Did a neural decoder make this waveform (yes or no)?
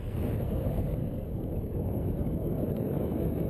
yes